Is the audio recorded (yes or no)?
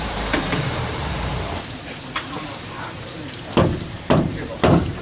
no